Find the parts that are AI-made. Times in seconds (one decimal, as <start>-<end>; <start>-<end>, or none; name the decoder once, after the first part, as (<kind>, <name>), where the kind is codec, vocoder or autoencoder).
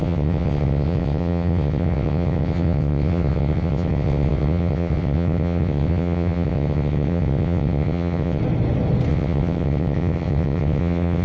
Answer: 0.0-8.4 (vocoder, WaveNeXt); 9.1-11.2